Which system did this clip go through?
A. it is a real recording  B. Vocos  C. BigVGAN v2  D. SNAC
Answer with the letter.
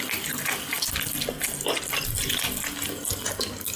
A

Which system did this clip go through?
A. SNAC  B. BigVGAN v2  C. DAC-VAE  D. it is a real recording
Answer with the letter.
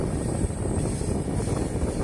D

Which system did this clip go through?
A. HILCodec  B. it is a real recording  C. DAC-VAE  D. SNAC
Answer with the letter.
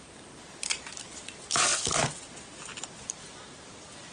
B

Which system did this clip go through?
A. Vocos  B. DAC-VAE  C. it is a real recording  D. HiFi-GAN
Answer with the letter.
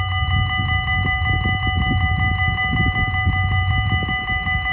C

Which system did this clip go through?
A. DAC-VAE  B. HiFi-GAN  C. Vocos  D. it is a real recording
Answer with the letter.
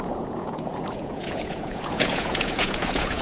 C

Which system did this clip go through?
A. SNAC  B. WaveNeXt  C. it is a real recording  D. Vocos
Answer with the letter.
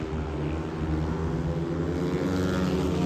C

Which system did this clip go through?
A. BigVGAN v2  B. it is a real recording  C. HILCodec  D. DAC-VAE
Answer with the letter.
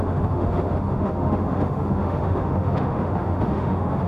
D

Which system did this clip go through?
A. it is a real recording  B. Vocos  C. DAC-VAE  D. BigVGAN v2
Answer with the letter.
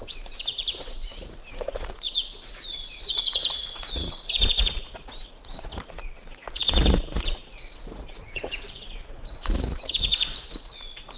B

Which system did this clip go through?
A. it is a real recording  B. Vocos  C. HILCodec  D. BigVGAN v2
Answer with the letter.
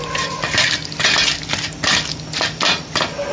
A